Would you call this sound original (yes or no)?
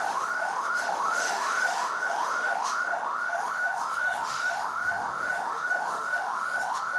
no